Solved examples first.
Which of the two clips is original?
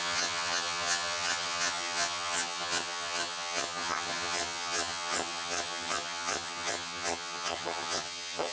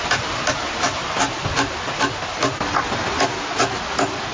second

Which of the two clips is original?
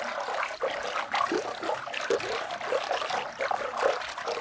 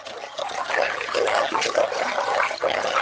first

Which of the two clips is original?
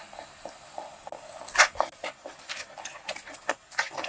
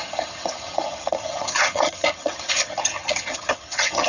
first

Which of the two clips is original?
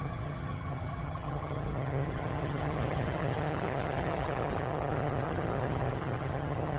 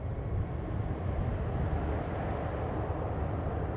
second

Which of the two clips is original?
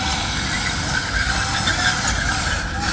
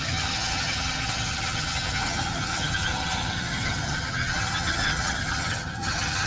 first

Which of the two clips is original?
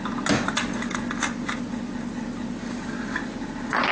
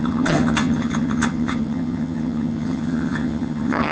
first